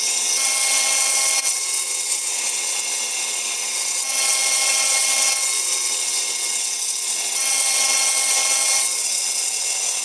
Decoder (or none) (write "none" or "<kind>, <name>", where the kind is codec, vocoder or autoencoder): vocoder, WaveNeXt